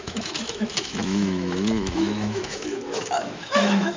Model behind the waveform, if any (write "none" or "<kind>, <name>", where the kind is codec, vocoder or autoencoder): autoencoder, DAC-VAE